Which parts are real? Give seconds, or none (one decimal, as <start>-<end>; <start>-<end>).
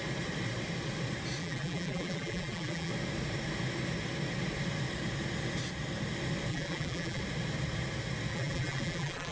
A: 0.0-1.4; 2.9-6.5; 7.2-8.3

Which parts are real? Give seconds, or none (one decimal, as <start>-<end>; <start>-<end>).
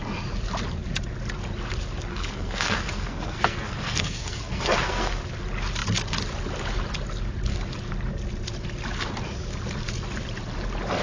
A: 0.0-2.1; 5.2-11.0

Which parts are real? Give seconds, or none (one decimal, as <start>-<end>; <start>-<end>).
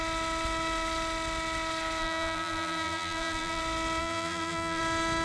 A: 0.0-2.0; 3.6-4.0; 4.8-5.2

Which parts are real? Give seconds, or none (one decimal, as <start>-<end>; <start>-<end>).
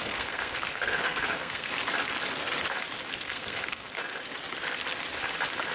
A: 1.7-3.2; 4.0-5.7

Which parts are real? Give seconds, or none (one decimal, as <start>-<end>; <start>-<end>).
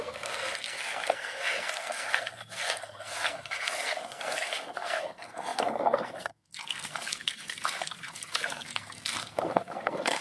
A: none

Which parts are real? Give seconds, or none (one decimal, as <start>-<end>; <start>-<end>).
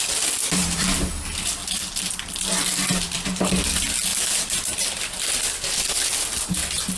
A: 0.0-1.6; 3.6-4.1; 6.1-7.0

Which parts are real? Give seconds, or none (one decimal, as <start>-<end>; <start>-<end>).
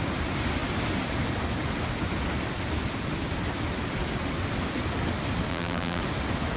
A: 0.0-5.5; 6.0-6.6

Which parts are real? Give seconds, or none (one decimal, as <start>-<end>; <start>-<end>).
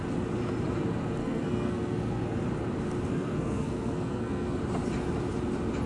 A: 0.0-1.2; 2.4-3.1; 4.6-5.9